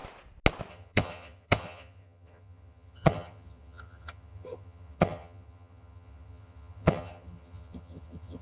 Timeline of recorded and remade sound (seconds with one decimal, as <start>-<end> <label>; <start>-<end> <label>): 0.0-0.7 recorded; 0.7-8.4 remade